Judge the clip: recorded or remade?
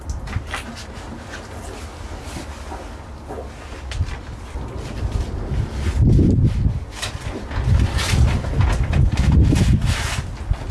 recorded